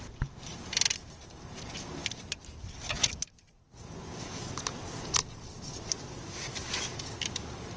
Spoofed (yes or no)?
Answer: no